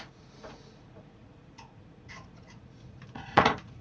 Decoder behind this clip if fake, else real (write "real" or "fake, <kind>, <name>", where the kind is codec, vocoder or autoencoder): fake, vocoder, Vocos